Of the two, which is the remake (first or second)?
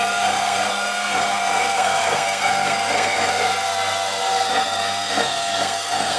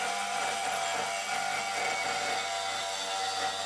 first